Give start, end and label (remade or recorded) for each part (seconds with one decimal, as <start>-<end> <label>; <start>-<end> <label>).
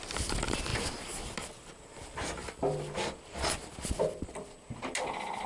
0.0-5.5 recorded